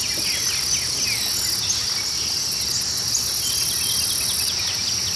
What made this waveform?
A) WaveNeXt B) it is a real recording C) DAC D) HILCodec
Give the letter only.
B